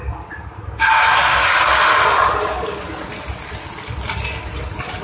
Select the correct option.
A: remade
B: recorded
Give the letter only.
B